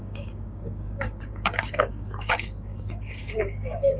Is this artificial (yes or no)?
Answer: yes